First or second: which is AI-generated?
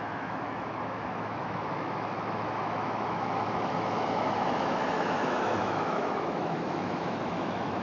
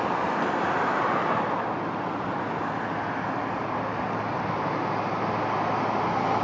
first